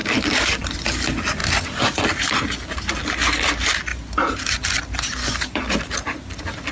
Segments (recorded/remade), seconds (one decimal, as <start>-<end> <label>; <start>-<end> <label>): 0.0-0.6 remade; 0.6-5.2 recorded; 5.2-5.8 remade; 5.8-6.7 recorded